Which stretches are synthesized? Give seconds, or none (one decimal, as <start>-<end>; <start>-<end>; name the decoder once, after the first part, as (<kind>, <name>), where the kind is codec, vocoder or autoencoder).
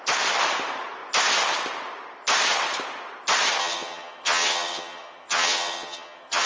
3.6-6.5 (vocoder, HiFi-GAN)